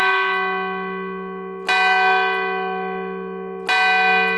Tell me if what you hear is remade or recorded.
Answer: recorded